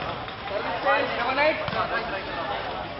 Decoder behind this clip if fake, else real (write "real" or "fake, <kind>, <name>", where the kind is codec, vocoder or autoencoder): real